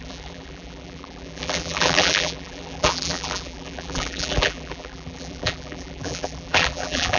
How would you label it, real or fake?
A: fake